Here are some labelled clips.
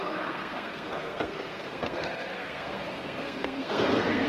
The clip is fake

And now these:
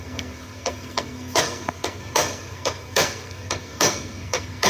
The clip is fake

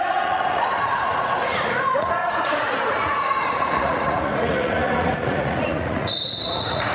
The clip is fake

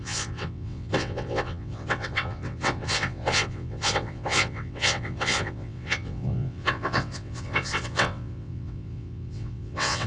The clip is fake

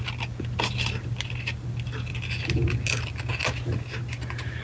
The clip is real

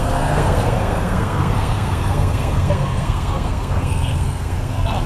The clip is fake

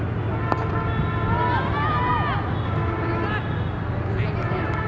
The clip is real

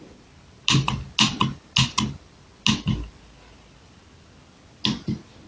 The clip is real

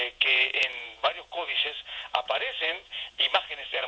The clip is fake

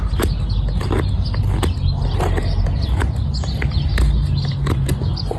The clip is real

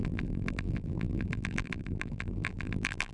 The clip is fake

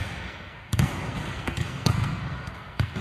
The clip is fake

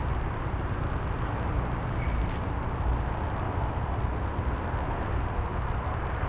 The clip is real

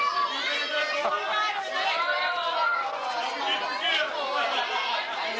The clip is real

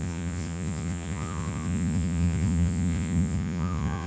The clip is fake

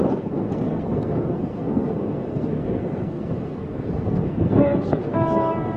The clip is fake